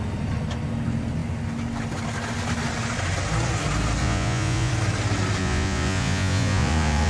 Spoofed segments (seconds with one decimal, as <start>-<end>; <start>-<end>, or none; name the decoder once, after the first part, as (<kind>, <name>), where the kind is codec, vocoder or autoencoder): 4.0-4.7 (vocoder, Vocos); 5.4-7.1